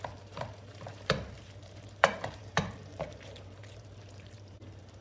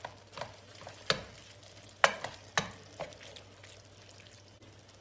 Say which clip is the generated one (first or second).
first